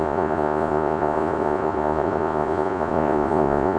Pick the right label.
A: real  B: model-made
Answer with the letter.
B